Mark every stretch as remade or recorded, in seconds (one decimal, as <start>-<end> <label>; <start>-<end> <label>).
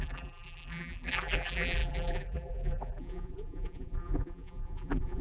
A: 0.0-5.2 remade